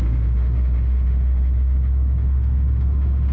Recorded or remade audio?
remade